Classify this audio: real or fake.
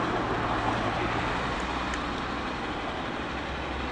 real